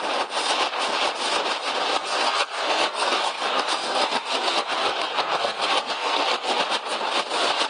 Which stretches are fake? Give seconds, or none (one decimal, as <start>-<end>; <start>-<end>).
2.0-6.6

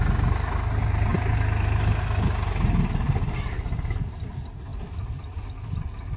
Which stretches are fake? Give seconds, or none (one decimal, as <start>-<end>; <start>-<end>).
none

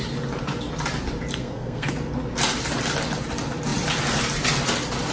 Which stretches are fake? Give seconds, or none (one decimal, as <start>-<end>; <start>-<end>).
1.4-1.9

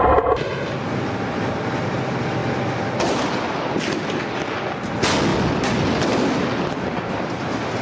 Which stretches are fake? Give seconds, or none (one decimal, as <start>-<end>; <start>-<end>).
none

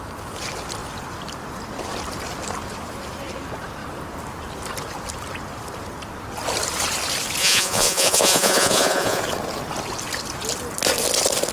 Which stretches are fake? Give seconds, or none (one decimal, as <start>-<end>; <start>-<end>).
7.4-9.2

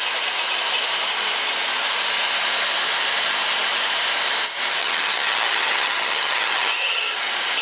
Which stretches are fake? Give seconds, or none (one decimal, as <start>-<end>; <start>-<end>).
4.8-7.0